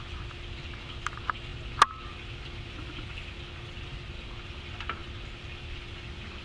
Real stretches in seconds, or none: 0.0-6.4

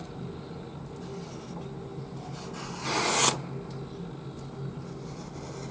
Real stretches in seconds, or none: 0.0-5.7

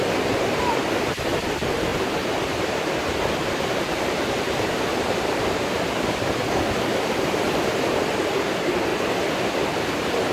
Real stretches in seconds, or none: 0.0-10.3

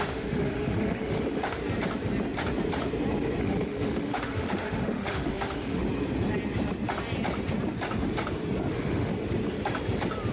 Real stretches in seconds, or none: 1.6-3.4; 5.8-8.7; 9.1-10.3

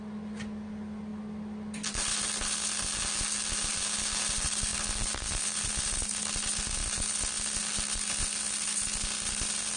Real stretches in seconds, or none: 0.0-9.8

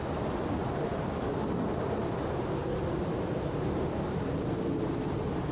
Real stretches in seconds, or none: 0.0-2.6; 4.5-5.5

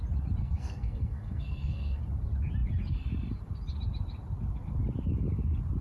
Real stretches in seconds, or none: 0.0-0.4; 2.0-5.8